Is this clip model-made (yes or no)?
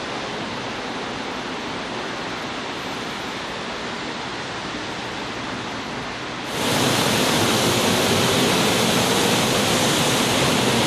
no